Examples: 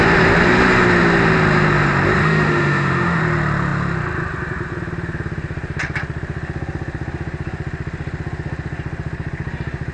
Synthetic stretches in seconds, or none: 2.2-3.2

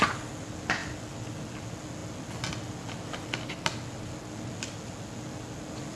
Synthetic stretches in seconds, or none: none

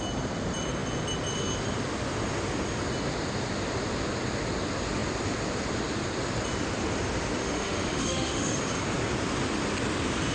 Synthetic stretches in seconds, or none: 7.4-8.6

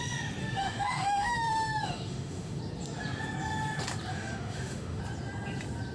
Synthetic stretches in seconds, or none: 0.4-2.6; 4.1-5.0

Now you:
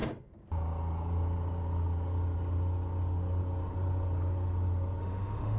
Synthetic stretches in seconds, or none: 5.0-5.6

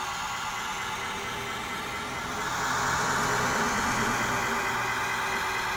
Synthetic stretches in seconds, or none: none